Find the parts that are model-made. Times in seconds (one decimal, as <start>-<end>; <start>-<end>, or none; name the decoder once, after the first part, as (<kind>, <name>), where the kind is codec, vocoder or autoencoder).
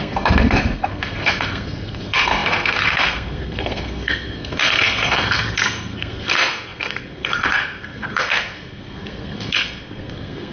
0.0-10.5 (codec, SNAC)